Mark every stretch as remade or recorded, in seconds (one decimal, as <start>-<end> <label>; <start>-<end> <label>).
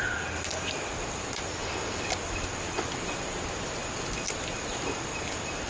0.0-1.6 recorded; 1.6-2.1 remade; 2.1-5.7 recorded